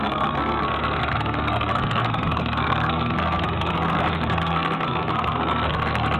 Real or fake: fake